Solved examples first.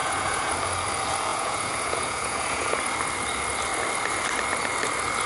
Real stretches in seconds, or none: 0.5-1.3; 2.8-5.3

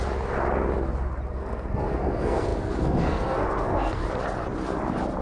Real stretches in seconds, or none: 0.0-1.3; 4.0-5.2

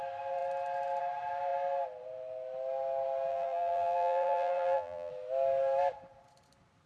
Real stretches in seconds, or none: 0.0-3.3; 5.1-6.9

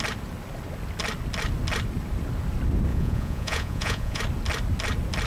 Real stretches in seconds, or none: 0.0-2.9; 4.2-5.3

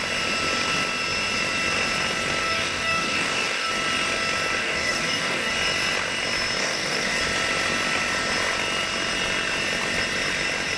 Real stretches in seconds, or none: 0.0-2.4; 3.7-4.6; 5.5-6.6; 7.2-10.8

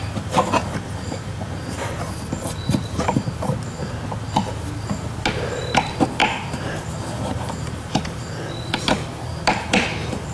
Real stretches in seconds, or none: 0.0-0.6; 2.1-6.2; 8.5-9.3

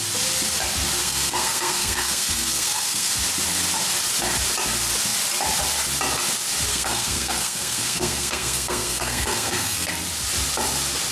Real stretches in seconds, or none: 0.0-1.0; 3.1-6.7; 9.9-11.1